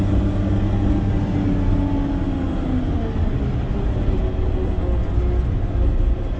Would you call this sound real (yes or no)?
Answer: yes